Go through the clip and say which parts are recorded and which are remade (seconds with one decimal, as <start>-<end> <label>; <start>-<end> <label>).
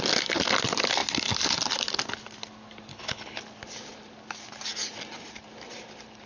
0.0-2.9 recorded; 2.9-3.4 remade; 3.4-6.3 recorded